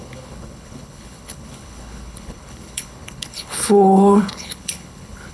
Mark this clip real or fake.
fake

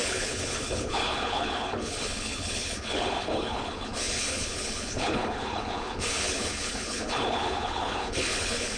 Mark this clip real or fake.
fake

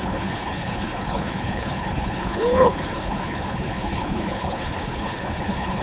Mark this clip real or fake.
fake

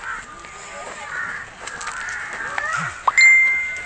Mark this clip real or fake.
real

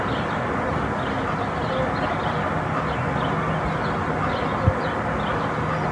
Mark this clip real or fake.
real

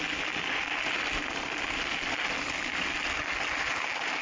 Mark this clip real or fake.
real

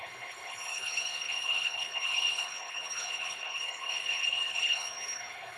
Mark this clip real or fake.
fake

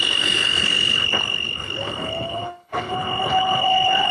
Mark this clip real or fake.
fake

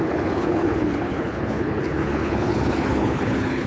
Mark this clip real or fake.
fake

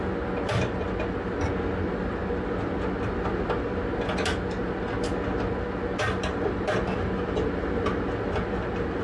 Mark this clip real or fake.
real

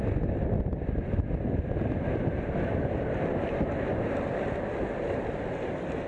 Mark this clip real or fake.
real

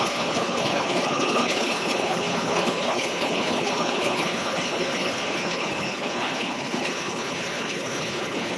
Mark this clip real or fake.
fake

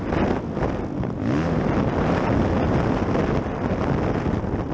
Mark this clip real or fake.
real